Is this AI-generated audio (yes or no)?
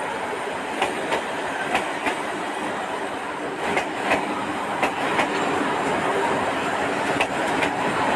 no